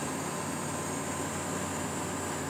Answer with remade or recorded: recorded